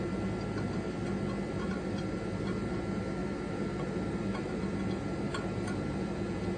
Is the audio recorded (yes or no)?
yes